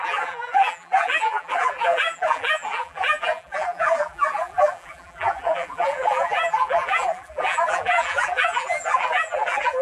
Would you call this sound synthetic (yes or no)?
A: yes